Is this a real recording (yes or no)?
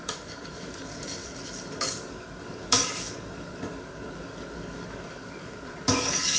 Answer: no